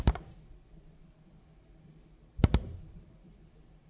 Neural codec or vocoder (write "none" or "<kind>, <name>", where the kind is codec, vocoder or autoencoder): none